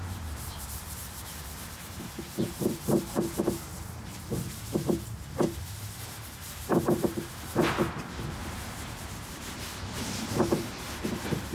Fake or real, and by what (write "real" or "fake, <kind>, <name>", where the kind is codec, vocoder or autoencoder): fake, vocoder, BigVGAN v2